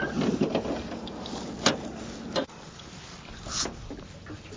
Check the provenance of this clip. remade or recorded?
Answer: recorded